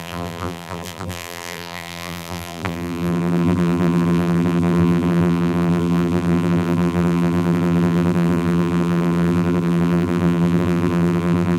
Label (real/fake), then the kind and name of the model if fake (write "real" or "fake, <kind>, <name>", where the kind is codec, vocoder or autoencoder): fake, vocoder, BigVGAN v2